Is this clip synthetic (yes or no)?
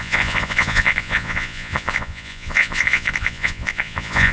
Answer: yes